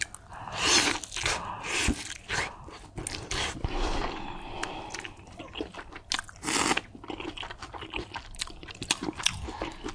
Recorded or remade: recorded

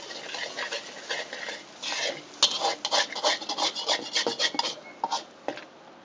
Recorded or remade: recorded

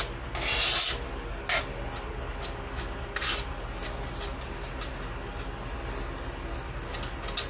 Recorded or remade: recorded